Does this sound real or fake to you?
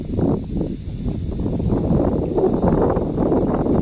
real